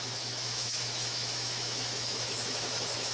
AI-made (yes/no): yes